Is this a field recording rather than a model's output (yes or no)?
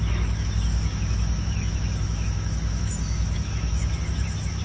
no